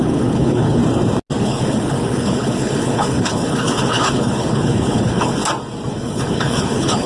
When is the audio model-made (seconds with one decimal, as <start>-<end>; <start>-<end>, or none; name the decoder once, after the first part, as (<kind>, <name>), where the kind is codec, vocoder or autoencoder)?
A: 0.0-0.8 (codec, HILCodec); 1.4-5.4; 5.9-7.1